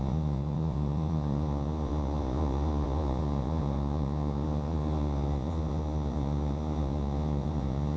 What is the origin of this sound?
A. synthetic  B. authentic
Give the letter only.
A